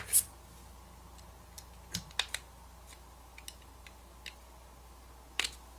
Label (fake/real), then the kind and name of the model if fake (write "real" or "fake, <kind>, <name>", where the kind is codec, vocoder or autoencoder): real